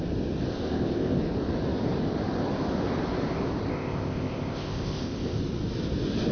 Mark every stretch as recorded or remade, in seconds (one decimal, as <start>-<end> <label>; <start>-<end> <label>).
0.0-0.5 recorded; 0.5-1.2 remade; 1.2-3.7 recorded; 3.7-5.4 remade; 5.4-6.3 recorded